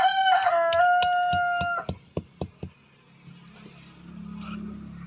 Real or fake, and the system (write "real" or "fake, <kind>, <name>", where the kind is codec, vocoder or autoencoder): real